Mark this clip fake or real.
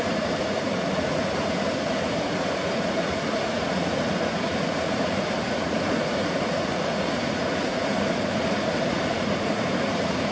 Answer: fake